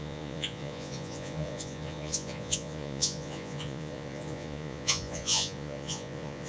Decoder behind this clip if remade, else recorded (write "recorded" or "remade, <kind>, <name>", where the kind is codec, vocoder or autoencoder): remade, vocoder, Vocos